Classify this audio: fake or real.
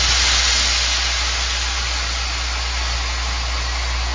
real